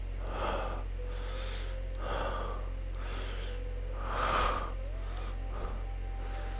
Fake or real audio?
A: real